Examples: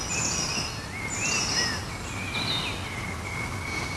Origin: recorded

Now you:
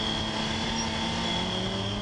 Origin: recorded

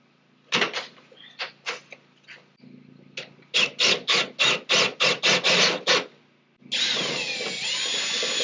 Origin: recorded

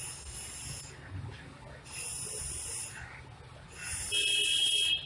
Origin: recorded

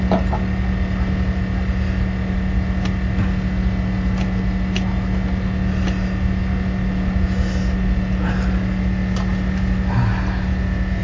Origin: recorded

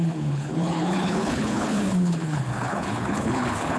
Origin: remade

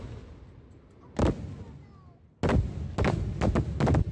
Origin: recorded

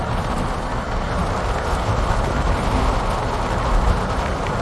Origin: recorded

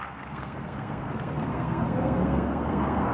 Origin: remade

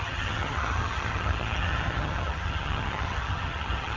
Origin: remade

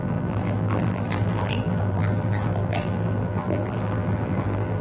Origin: remade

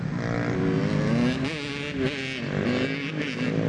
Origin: recorded